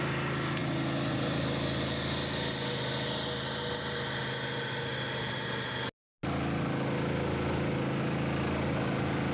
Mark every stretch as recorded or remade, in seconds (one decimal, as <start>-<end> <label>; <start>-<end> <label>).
0.0-9.3 recorded